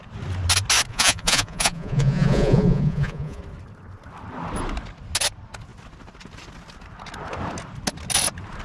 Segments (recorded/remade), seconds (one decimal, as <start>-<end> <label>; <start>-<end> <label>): 0.0-0.9 recorded; 0.9-3.4 remade; 3.4-8.6 recorded